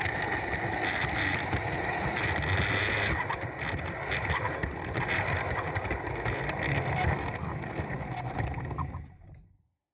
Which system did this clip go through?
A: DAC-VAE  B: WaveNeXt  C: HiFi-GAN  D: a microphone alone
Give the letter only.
D